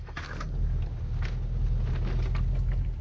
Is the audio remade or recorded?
recorded